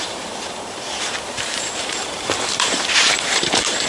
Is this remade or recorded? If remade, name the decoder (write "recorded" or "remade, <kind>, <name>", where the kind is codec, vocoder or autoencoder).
remade, vocoder, BigVGAN v2